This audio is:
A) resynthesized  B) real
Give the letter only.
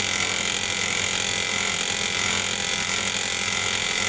B